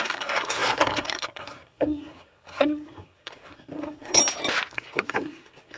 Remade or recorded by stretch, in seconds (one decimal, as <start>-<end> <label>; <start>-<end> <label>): 0.0-4.2 remade; 4.2-4.7 recorded; 4.7-5.8 remade

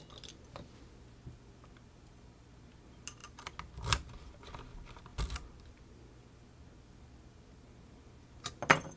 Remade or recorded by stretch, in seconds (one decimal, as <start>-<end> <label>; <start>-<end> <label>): 0.0-9.0 recorded

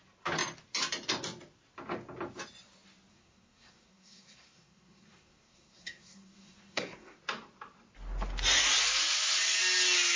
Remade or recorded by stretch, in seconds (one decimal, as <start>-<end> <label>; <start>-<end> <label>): 0.0-3.1 recorded; 3.1-7.2 remade; 7.2-10.2 recorded

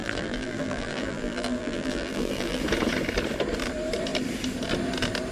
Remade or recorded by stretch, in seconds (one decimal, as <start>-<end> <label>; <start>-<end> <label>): 0.0-2.6 remade; 2.6-5.3 recorded

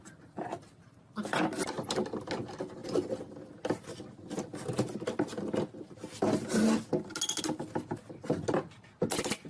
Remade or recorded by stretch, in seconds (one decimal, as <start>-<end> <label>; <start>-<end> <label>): 0.0-9.5 recorded

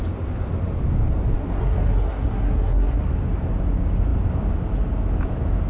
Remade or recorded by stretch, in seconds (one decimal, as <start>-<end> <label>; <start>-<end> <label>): 0.0-1.6 recorded; 1.6-3.1 remade; 3.1-5.7 recorded

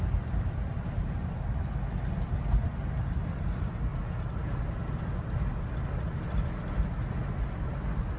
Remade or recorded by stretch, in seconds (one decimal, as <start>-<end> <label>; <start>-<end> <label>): 0.0-8.2 recorded